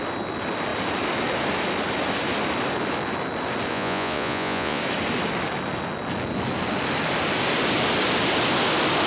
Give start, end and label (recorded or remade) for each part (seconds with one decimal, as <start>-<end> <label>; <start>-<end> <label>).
0.0-3.7 recorded; 3.7-4.8 remade; 4.8-9.1 recorded